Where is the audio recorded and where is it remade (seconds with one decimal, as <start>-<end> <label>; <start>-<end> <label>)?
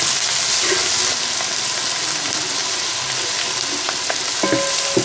0.0-5.0 recorded